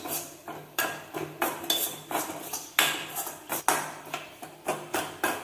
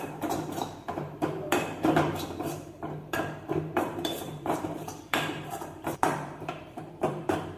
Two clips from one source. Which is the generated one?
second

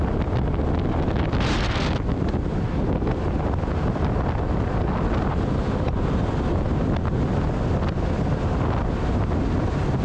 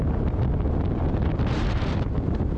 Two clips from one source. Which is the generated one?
second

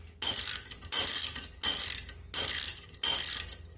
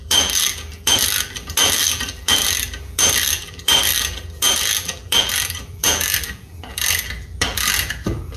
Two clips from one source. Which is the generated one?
second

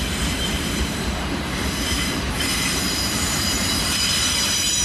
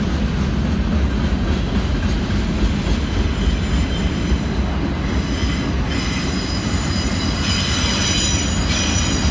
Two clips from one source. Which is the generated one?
first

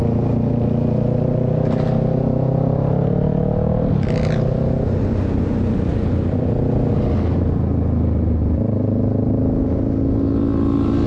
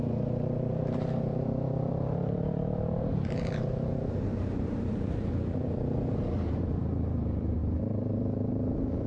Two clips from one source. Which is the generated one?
second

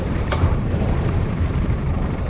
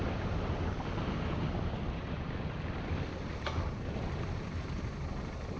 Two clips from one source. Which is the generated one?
first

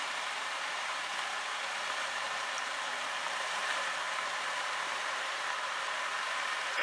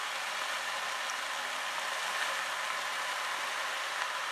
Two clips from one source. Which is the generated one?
first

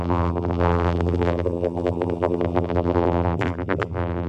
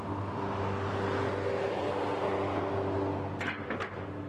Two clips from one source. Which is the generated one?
first